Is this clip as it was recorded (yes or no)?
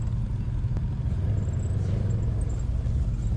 yes